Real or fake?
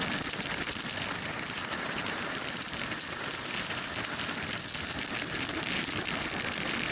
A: fake